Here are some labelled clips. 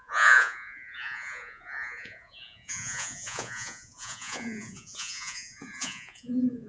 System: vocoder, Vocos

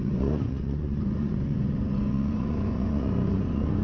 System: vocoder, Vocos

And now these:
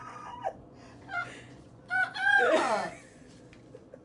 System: vocoder, Vocos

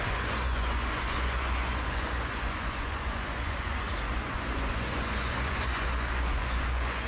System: vocoder, Vocos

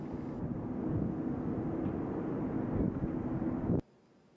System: none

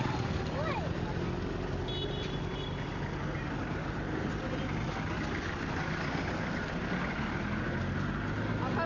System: none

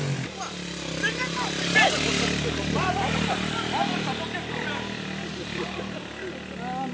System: none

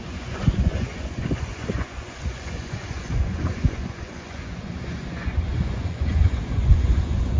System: vocoder, Vocos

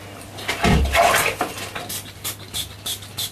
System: none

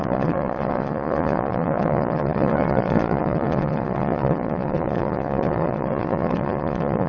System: vocoder, Vocos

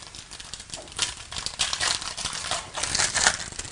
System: none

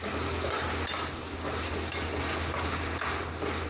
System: none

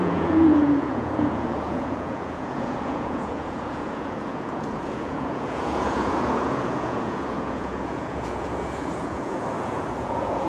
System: vocoder, Vocos